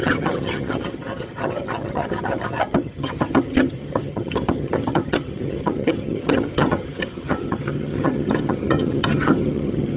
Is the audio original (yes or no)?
no